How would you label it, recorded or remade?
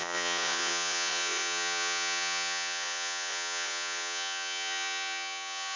remade